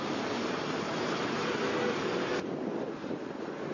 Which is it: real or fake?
fake